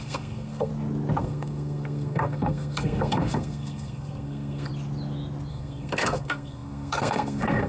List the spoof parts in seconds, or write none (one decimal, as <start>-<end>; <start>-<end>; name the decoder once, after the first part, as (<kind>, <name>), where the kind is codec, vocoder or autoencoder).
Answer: 0.0-0.7 (codec, SNAC); 1.2-4.7; 5.5-7.7